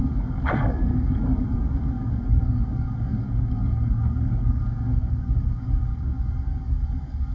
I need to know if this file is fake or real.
fake